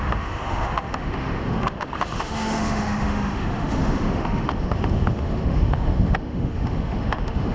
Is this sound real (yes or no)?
no